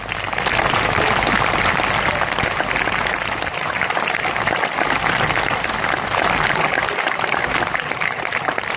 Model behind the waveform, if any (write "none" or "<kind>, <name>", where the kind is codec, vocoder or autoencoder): vocoder, BigVGAN v2